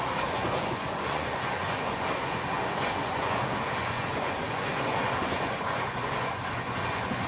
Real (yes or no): no